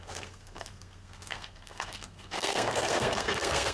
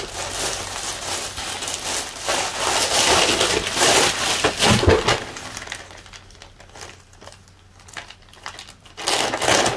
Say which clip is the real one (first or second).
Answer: second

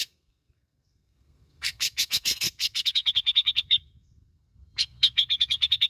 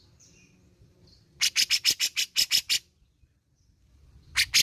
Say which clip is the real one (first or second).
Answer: second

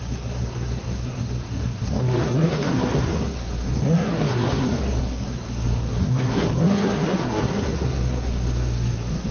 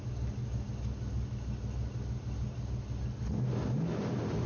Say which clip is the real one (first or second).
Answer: second